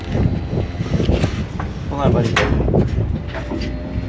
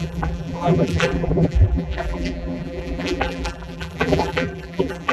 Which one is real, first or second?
first